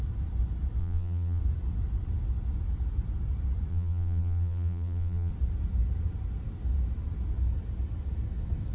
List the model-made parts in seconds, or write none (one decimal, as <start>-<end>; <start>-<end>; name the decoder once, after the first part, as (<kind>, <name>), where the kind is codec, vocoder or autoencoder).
0.8-1.4 (vocoder, BigVGAN v2); 3.7-5.3